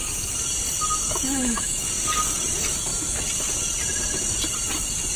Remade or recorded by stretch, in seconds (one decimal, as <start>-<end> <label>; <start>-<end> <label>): 0.0-1.0 recorded; 1.0-1.9 remade; 1.9-5.2 recorded